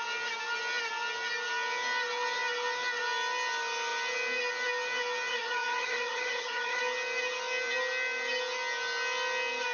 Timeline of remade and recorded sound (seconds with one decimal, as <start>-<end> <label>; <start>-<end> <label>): 0.0-5.3 recorded; 5.3-6.8 remade; 6.8-9.7 recorded